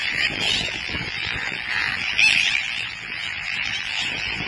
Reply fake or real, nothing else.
fake